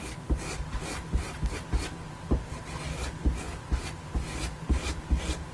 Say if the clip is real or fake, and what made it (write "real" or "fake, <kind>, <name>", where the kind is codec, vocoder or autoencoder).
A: real